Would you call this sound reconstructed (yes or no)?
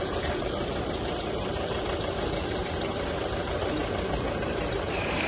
yes